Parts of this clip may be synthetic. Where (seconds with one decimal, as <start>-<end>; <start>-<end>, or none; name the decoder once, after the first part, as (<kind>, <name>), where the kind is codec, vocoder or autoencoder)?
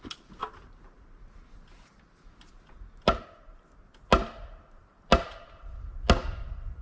none